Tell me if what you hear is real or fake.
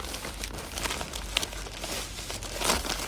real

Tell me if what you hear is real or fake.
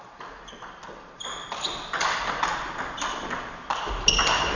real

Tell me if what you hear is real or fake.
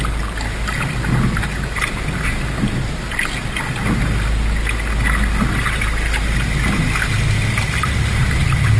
real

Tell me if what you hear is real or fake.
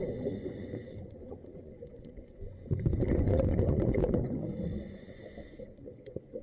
fake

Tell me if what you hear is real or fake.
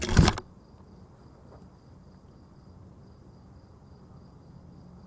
real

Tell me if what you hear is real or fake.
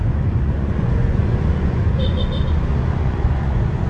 fake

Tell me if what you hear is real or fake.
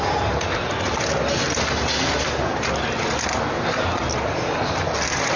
real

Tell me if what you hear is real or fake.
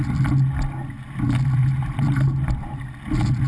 real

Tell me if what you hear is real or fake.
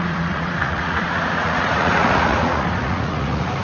fake